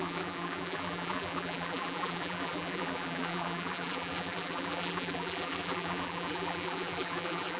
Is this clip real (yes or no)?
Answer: no